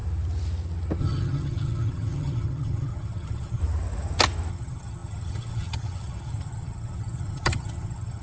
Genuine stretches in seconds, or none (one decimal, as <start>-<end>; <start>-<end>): 0.0-1.0; 3.6-4.5